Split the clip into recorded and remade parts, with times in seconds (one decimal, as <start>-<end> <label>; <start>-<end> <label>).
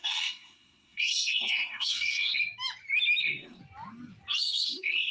0.0-2.4 remade; 2.4-3.2 recorded; 3.2-3.6 remade; 3.6-4.4 recorded; 4.4-5.1 remade